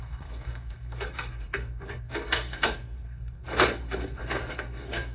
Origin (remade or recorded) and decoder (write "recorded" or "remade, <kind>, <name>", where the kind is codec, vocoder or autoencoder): remade, codec, SNAC